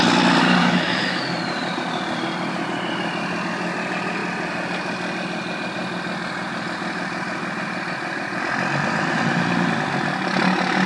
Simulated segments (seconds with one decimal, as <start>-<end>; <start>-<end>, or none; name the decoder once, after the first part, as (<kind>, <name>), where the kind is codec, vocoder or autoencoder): 0.6-1.2 (autoencoder, DAC-VAE)